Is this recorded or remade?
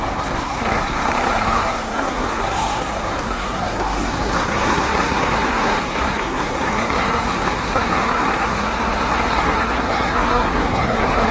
remade